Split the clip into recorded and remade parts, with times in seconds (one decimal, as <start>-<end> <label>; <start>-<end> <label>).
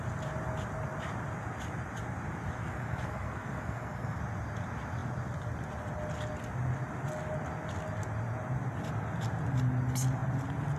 0.0-2.6 recorded; 2.6-4.2 remade; 4.2-10.8 recorded